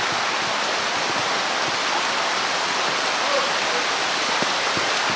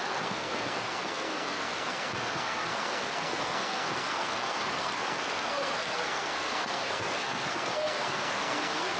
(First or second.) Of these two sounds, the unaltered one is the first